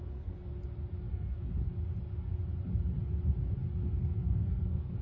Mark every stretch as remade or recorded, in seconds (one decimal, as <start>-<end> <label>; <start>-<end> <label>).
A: 0.0-0.5 remade; 0.5-1.1 recorded; 1.1-1.5 remade; 1.5-4.1 recorded; 4.1-5.0 remade